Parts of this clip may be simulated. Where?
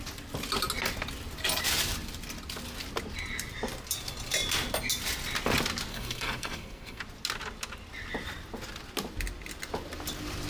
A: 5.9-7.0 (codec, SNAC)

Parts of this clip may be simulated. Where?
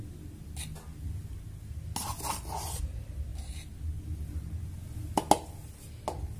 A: none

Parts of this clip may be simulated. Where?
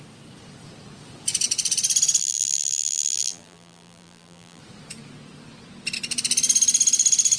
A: 2.2-4.6 (vocoder, BigVGAN v2)